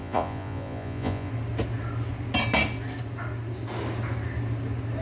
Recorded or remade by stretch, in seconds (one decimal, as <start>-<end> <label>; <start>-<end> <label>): 0.0-1.3 remade; 1.3-5.0 recorded